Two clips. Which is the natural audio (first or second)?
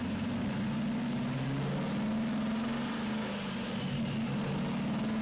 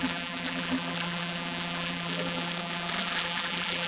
first